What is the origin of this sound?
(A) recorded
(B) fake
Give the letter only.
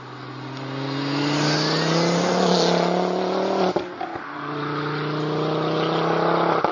A